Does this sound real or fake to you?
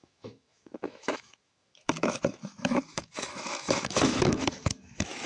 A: fake